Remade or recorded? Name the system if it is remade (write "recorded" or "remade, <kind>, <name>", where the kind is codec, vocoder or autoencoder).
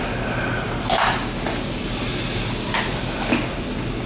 recorded